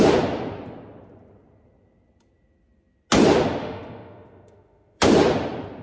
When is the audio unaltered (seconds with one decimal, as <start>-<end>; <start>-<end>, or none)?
0.0-3.6; 5.0-5.8